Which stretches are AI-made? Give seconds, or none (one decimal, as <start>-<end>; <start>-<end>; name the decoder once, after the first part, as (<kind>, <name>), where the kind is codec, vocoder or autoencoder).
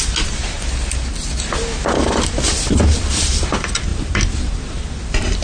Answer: none